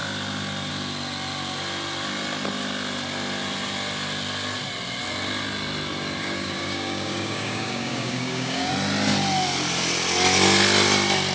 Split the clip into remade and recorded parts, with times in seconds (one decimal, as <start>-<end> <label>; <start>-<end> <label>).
0.0-6.2 recorded; 6.2-8.7 remade; 8.7-11.3 recorded